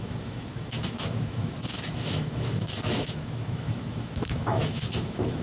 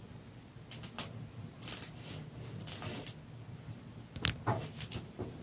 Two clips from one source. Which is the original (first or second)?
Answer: second